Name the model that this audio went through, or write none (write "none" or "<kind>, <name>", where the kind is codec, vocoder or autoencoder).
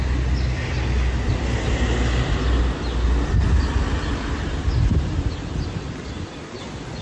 none